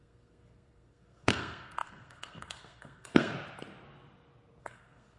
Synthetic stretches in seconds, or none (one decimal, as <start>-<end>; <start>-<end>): 0.0-3.3; 4.6-5.2